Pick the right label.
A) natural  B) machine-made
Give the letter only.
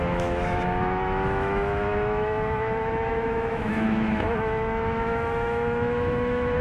B